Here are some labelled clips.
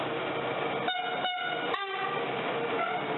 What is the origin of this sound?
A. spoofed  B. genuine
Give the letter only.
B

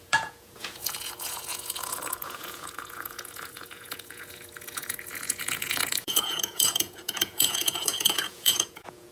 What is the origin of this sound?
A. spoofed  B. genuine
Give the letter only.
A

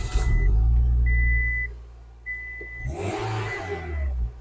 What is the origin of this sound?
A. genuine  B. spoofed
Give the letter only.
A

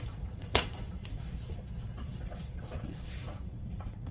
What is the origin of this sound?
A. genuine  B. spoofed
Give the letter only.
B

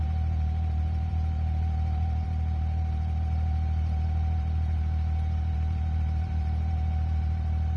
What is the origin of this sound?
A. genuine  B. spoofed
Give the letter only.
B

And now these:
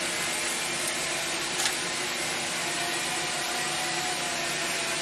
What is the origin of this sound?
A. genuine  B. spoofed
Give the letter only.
A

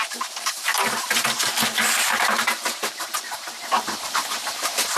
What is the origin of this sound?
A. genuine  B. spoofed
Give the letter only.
B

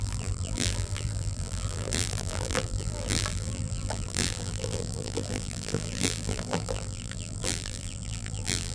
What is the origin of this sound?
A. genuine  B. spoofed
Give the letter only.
B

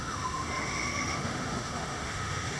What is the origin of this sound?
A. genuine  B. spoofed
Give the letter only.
B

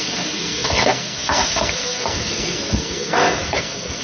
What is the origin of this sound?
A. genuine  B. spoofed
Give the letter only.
B